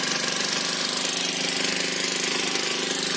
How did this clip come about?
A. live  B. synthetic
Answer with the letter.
A